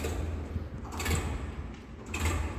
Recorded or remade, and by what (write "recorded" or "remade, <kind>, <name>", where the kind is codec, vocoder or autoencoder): recorded